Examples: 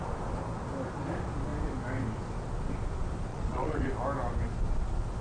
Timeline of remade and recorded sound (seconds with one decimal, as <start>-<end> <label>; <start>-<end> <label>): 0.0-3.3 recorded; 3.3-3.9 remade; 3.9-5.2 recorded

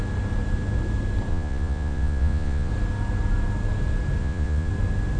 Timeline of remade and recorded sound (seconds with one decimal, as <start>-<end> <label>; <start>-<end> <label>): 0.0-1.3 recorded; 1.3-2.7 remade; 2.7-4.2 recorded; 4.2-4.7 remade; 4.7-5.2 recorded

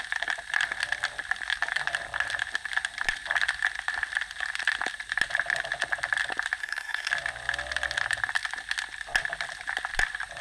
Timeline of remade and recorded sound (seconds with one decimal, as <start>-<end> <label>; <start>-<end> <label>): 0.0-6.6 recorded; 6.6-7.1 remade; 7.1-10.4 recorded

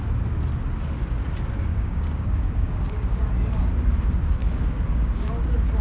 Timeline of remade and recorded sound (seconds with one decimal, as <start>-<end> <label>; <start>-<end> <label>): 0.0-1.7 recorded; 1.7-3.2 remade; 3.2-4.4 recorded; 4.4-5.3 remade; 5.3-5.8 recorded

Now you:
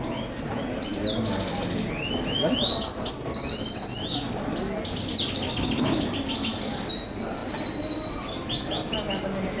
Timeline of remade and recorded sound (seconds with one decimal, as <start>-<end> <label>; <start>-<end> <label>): 0.0-9.6 recorded

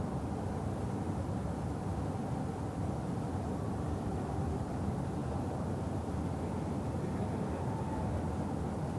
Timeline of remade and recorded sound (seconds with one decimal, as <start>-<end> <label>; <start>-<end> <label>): 0.0-1.9 remade; 1.9-4.7 recorded; 4.7-5.2 remade; 5.2-8.5 recorded; 8.5-9.0 remade

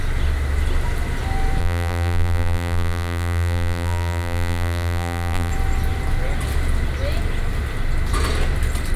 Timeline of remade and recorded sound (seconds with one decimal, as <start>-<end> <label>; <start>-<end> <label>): 0.0-1.6 recorded; 1.6-5.5 remade; 5.5-9.0 recorded